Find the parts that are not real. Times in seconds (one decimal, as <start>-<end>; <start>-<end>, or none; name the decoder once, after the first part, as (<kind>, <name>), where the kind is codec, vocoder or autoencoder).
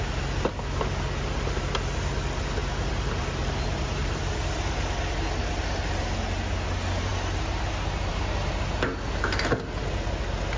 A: 2.6-4.2 (vocoder, BigVGAN v2)